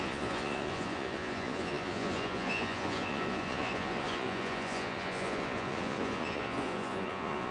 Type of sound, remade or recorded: remade